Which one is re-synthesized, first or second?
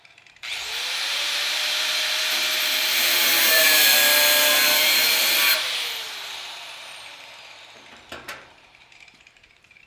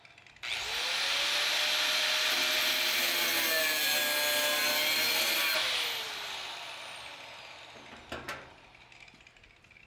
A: first